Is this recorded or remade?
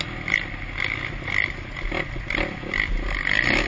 recorded